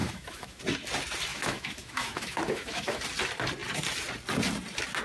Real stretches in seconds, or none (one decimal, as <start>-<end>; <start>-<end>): 0.6-1.3; 3.0-5.0